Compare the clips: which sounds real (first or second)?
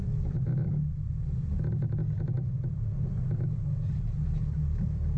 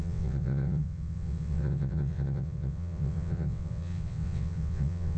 first